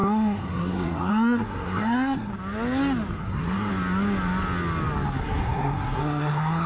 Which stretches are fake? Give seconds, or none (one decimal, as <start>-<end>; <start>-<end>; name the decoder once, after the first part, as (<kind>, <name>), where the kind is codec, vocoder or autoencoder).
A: 0.0-2.3 (codec, SNAC); 3.2-3.7; 5.2-6.7